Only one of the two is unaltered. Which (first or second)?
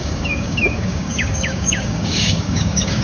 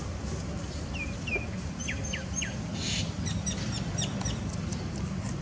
second